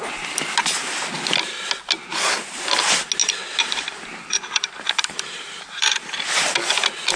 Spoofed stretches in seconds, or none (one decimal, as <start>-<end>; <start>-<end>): 3.2-6.2